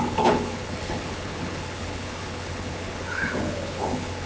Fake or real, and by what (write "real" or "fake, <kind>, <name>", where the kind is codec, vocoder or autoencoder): fake, codec, HILCodec